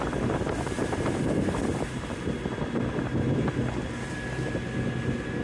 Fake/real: real